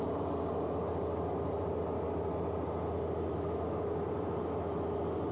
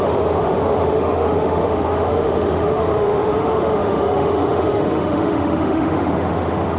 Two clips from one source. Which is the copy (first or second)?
second